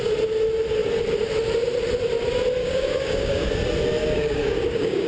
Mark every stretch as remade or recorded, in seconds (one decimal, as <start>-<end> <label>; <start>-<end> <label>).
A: 0.0-2.6 recorded; 2.6-3.5 remade; 3.5-4.0 recorded; 4.0-5.1 remade